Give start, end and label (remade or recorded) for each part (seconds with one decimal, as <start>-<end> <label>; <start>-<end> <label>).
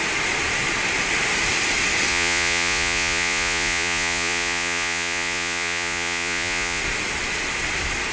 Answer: 0.0-2.1 recorded; 2.1-6.8 remade; 6.8-8.1 recorded